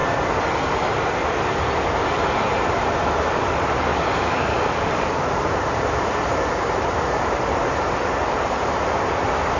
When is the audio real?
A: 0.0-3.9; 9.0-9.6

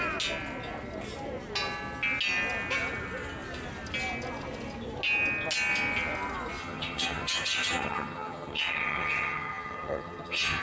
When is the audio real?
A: 0.0-6.6

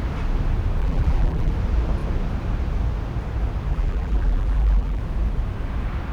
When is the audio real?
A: 0.0-0.8; 1.5-3.7; 5.0-6.1

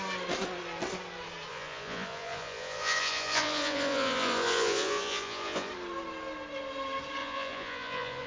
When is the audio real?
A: 0.0-1.5; 5.7-7.2

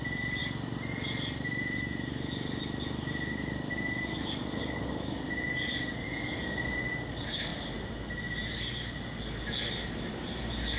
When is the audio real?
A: 0.0-10.8

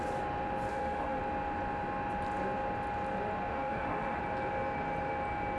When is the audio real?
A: 0.0-0.7; 1.2-3.5; 4.2-5.6